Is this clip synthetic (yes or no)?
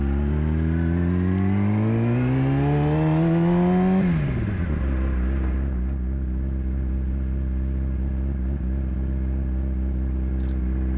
no